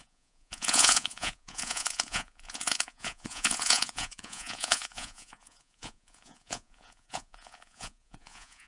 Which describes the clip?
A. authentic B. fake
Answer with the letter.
B